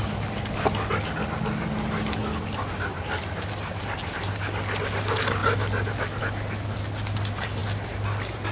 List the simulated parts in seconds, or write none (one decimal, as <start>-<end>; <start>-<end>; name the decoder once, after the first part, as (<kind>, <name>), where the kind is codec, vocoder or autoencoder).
none